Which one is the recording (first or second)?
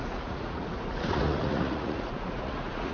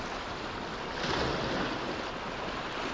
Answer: second